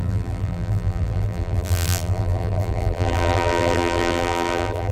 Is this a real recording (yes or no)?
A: no